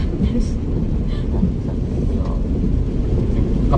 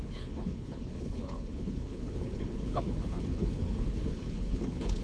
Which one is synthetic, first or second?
second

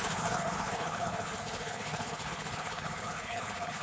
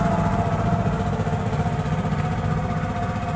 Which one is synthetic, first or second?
first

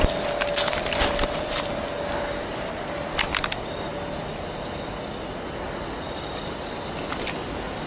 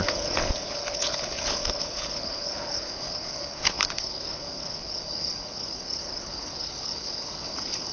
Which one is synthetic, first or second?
second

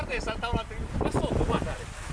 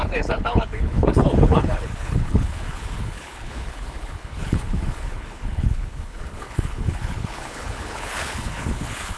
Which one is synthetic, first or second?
second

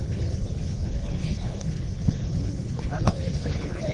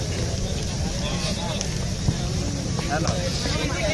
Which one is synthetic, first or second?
first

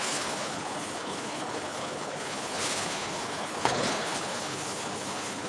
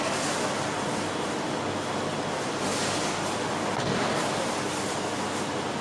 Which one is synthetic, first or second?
first